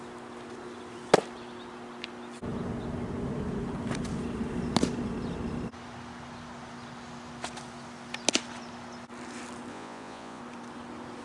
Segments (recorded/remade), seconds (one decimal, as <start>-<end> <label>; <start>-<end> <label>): 0.0-9.7 recorded; 9.7-10.4 remade; 10.4-11.2 recorded